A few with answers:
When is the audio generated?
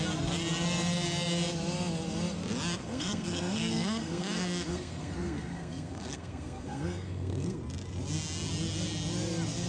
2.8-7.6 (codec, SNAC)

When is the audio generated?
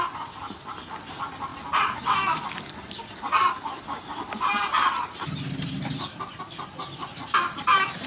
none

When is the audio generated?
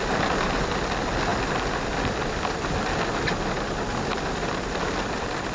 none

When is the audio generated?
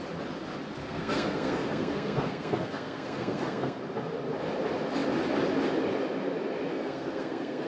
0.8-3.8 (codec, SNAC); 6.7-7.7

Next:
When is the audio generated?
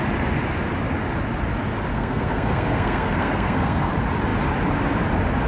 1.9-3.9 (codec, SNAC)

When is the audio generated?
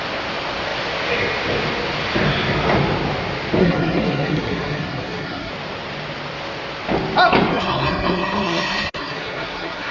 3.6-5.5 (codec, SNAC); 7.5-9.9